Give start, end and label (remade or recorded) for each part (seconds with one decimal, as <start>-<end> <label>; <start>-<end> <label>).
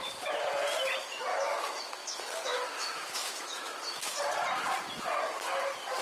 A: 0.0-1.3 recorded; 1.3-4.2 remade; 4.2-6.0 recorded